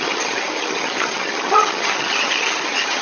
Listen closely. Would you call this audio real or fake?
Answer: fake